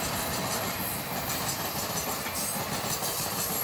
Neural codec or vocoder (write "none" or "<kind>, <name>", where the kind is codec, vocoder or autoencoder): none